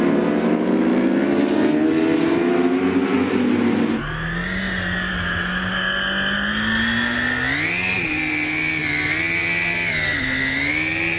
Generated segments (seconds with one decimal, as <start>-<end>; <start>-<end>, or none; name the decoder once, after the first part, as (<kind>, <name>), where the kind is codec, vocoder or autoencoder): none